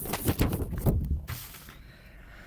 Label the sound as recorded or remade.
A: remade